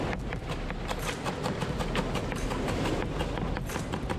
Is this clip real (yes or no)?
yes